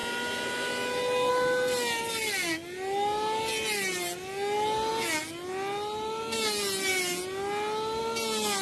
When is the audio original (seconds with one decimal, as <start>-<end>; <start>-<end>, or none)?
0.0-8.6